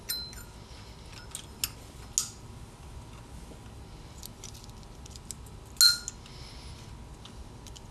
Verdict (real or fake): real